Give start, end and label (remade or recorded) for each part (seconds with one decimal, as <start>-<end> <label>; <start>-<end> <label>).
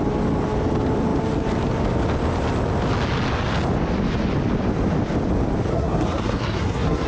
0.0-5.7 recorded; 5.7-7.1 remade